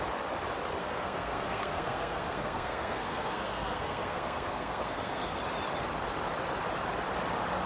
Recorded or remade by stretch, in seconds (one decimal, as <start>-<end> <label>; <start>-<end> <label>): 0.0-0.8 recorded; 0.8-5.4 remade; 5.4-7.7 recorded